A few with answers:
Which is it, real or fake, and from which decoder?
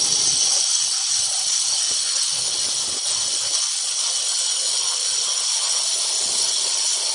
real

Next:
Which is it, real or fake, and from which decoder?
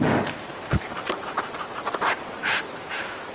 fake, vocoder, BigVGAN v2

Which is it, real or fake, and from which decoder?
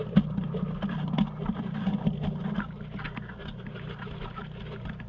real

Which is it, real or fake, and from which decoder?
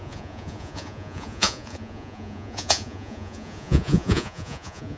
fake, vocoder, Vocos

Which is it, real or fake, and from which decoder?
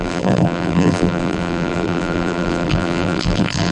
fake, vocoder, BigVGAN v2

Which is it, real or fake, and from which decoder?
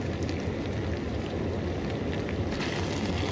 real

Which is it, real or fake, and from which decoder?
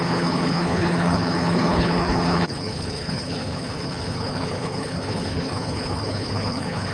fake, codec, HILCodec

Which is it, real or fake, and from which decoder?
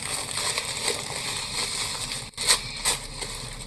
real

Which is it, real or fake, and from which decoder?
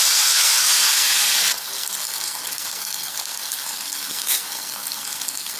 fake, codec, SNAC